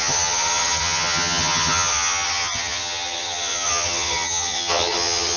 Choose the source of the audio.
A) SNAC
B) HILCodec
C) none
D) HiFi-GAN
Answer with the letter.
D